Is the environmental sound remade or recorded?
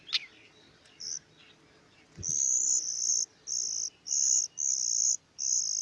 recorded